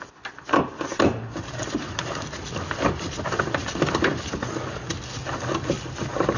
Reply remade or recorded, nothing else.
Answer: recorded